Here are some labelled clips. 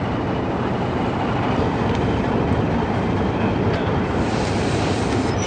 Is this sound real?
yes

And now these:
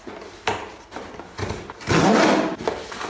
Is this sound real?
yes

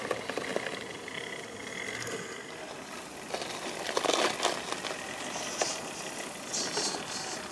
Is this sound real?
yes